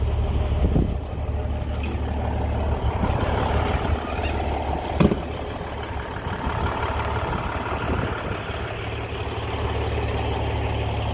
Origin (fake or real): real